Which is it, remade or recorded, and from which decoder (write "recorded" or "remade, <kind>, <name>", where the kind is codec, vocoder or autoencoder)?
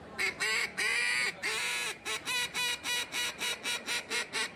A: recorded